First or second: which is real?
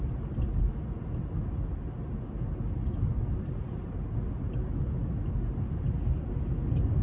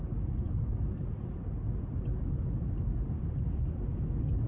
first